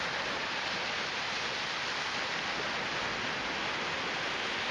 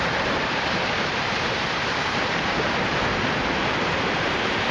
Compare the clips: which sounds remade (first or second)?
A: second